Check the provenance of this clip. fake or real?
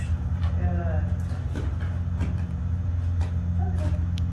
real